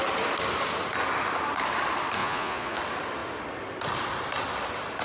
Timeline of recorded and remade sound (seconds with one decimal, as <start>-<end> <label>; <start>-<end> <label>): 0.0-2.2 recorded; 2.2-2.8 remade; 2.8-5.0 recorded